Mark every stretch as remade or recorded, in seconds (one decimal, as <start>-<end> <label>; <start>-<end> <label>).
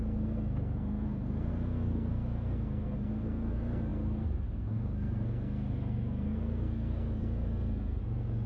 0.0-8.5 remade